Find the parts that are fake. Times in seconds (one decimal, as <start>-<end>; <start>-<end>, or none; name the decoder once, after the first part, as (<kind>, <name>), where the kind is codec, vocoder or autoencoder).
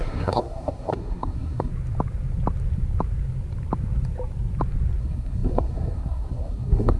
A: 0.0-1.7 (codec, SNAC); 5.0-7.0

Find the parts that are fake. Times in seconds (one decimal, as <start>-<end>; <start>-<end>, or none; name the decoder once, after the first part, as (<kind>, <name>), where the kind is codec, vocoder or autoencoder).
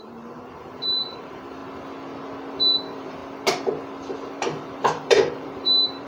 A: 0.0-1.6 (vocoder, BigVGAN v2); 2.7-3.2; 4.3-6.1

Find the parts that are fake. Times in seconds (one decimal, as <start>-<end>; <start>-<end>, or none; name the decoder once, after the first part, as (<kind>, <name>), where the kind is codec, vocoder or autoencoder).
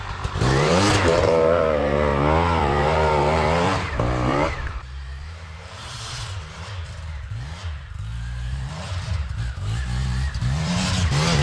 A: 0.0-2.1 (vocoder, BigVGAN v2); 2.6-11.4